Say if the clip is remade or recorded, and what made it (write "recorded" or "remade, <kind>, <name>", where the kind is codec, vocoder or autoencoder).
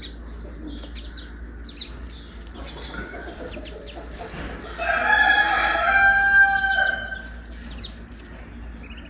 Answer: recorded